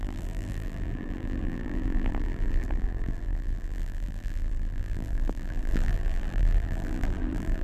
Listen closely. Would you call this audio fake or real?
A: fake